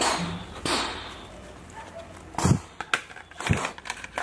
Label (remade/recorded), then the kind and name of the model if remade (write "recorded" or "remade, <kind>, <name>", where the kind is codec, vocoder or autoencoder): recorded